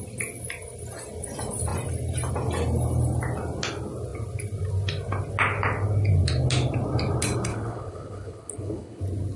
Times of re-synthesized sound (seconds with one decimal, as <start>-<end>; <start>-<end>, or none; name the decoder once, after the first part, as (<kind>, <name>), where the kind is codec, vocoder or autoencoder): 7.5-9.0 (codec, HILCodec)